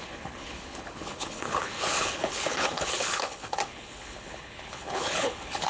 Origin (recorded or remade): remade